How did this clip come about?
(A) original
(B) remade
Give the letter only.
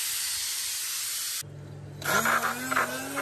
A